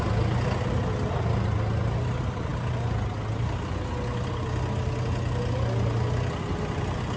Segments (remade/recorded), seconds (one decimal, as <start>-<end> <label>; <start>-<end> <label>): 0.0-7.2 recorded